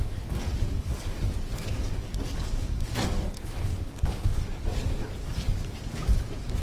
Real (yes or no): no